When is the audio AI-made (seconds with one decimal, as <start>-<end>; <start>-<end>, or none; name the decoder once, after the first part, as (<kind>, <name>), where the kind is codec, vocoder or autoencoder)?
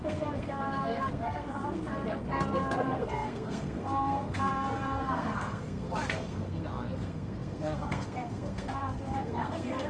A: 0.0-9.9 (codec, SNAC)